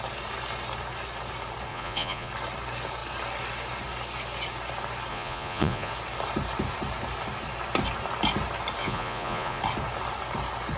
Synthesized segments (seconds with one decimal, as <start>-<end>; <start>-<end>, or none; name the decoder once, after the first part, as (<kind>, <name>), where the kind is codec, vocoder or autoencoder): 1.7-2.3 (vocoder, Vocos); 5.1-5.9; 8.8-9.6